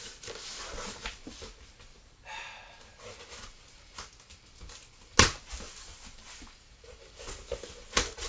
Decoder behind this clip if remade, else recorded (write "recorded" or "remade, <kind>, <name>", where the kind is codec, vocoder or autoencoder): recorded